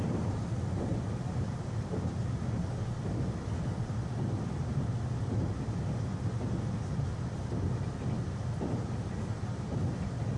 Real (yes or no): yes